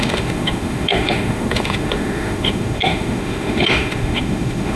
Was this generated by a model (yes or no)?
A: yes